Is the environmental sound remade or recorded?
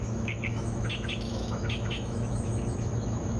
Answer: remade